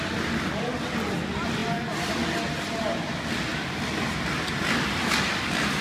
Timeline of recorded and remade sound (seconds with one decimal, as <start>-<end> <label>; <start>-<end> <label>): 0.0-5.8 recorded

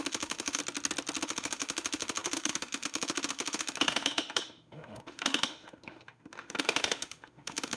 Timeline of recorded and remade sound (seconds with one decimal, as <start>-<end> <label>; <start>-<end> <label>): 0.0-0.6 remade; 0.6-1.2 recorded; 1.2-7.8 remade

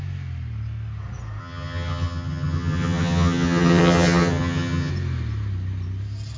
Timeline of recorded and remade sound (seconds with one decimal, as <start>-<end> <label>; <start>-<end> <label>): 0.0-1.4 recorded; 1.4-4.9 remade; 4.9-6.4 recorded

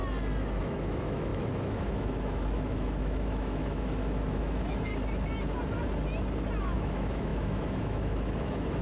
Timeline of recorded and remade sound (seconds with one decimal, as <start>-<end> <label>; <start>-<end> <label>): 0.0-0.6 recorded; 0.6-4.9 remade; 4.9-6.6 recorded; 6.6-8.8 remade

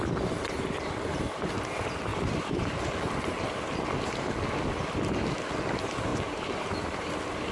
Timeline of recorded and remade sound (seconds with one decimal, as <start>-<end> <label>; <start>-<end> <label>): 0.0-6.1 recorded; 6.1-7.1 remade; 7.1-7.5 recorded

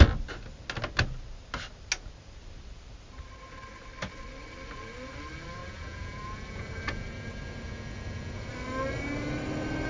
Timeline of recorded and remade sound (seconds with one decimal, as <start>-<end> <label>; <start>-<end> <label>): 0.0-5.6 recorded; 5.6-8.5 remade; 8.5-9.9 recorded

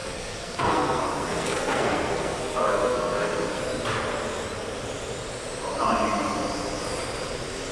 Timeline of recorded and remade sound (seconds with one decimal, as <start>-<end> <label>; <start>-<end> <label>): 0.0-3.6 remade; 3.6-7.7 recorded

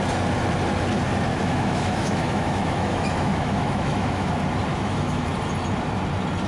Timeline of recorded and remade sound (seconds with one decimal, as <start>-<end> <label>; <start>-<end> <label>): 0.0-1.3 recorded; 1.3-4.3 remade; 4.3-4.7 recorded; 4.7-5.3 remade; 5.3-6.5 recorded